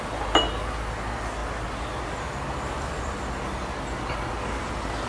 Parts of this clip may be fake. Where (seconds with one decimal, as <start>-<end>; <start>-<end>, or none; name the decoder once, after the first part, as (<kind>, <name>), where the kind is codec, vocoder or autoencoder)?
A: none